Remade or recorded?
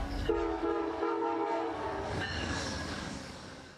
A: remade